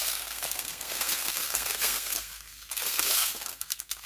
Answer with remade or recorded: remade